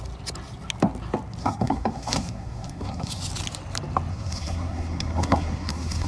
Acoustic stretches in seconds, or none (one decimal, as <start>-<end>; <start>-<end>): 0.0-1.4; 3.2-4.1